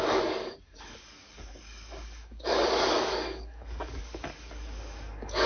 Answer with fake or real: fake